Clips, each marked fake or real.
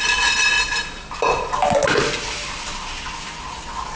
real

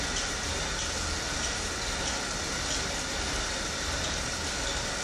real